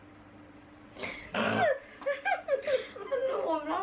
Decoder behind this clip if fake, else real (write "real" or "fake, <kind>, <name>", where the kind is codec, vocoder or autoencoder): real